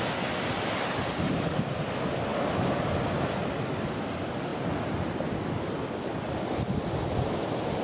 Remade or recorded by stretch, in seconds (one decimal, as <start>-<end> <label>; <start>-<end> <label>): 0.0-2.3 recorded; 2.3-2.8 remade; 2.8-6.1 recorded; 6.1-6.8 remade; 6.8-7.8 recorded